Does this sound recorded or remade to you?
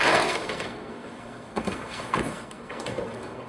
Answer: remade